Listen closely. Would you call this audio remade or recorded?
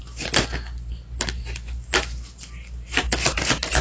recorded